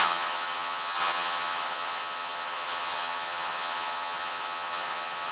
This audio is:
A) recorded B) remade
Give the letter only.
B